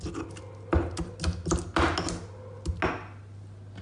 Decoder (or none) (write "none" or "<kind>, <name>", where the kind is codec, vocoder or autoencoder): none